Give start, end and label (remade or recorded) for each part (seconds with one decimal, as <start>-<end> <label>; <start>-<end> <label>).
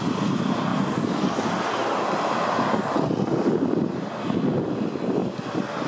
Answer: 0.0-5.9 recorded